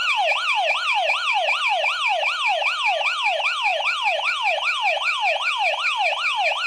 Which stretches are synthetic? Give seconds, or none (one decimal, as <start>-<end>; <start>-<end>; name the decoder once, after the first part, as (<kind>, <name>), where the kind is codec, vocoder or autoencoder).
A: none